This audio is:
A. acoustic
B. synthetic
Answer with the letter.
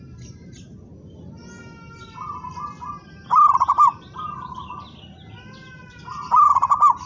A